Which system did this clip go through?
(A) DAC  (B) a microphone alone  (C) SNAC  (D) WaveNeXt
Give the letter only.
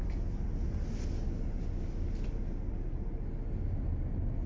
B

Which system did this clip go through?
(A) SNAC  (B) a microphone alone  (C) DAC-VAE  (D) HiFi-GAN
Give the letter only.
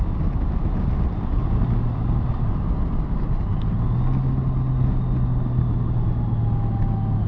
B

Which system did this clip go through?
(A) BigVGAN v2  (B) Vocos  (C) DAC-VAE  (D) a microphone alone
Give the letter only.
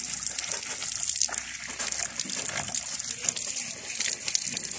D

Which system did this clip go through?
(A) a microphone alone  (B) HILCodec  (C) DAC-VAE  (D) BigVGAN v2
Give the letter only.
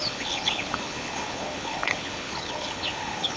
B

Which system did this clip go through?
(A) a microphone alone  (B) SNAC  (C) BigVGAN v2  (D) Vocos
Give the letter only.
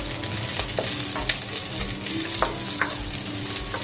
A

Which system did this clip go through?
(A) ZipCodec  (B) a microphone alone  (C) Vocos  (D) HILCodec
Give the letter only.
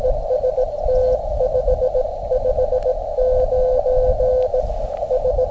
B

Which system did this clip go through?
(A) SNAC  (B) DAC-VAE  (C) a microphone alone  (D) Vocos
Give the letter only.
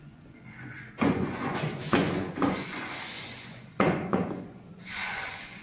D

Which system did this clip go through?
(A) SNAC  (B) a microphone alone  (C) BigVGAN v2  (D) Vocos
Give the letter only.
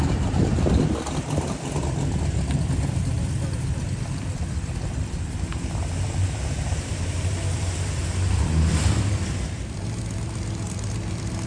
C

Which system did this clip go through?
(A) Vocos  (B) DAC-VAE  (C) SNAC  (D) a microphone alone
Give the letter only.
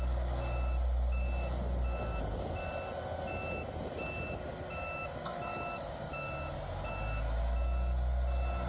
D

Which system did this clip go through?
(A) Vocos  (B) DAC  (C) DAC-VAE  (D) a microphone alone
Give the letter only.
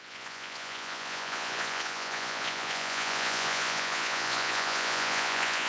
A